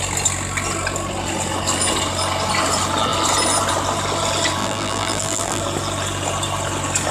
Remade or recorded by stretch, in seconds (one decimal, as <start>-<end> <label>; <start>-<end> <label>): 0.0-4.6 recorded; 4.6-5.6 remade; 5.6-7.1 recorded